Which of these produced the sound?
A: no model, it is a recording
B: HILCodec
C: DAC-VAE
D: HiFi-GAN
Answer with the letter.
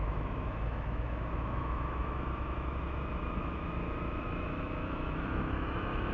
C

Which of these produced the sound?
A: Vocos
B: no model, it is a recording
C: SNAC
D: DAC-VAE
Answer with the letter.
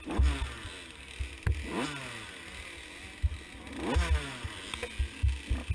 B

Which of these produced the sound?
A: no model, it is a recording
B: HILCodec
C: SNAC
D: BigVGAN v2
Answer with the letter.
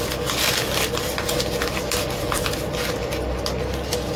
A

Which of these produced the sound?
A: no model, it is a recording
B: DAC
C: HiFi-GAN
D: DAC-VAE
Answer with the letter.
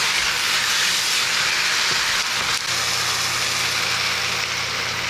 A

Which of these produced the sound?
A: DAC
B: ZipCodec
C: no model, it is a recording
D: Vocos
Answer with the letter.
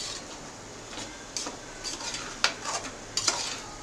C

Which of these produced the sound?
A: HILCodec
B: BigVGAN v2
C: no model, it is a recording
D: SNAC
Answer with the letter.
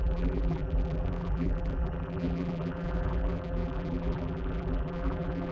B